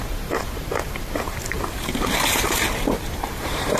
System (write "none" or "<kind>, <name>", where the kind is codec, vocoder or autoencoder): vocoder, BigVGAN v2